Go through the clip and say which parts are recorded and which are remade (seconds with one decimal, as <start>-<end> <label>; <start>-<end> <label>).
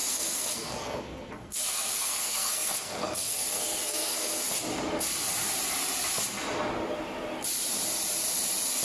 0.0-4.5 remade; 4.5-8.8 recorded